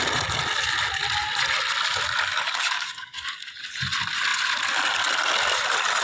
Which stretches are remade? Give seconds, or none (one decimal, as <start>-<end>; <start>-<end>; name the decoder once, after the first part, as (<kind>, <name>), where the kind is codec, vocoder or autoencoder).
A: 2.3-3.5 (codec, DAC)